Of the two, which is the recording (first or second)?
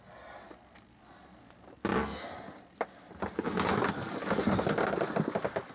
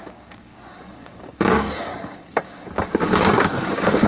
first